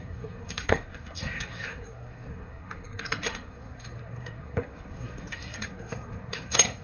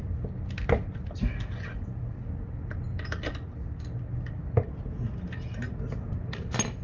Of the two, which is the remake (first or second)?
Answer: first